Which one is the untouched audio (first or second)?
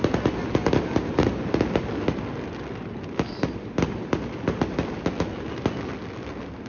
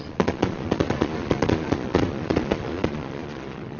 first